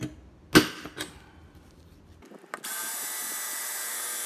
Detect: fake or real real